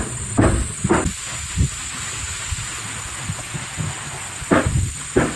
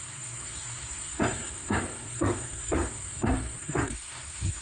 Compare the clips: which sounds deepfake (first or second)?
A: second